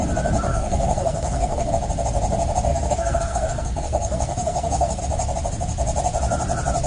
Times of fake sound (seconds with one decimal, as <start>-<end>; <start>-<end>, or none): 0.5-1.7; 2.7-5.0